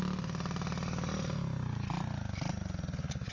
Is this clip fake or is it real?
real